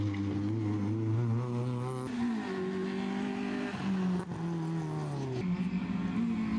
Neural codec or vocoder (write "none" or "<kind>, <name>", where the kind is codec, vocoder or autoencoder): none